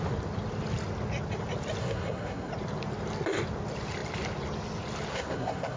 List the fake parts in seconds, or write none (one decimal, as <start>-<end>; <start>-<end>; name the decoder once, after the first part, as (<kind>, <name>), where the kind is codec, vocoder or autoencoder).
1.8-2.5 (codec, SNAC); 5.1-5.8

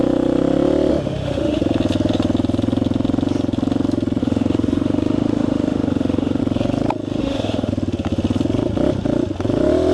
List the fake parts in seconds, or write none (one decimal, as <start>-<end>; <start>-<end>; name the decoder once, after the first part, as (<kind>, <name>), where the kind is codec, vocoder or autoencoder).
0.9-1.6 (autoencoder, DAC-VAE); 4.2-6.4; 7.2-7.7

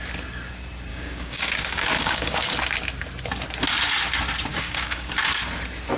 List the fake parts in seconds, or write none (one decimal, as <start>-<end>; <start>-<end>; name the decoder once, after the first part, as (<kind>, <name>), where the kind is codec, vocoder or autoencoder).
0.9-2.5 (codec, DAC); 4.5-5.1

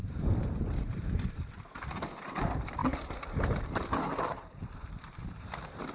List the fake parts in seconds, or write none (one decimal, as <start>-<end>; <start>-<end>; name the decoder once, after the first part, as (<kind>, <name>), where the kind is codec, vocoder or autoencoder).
0.0-5.9 (vocoder, BigVGAN v2)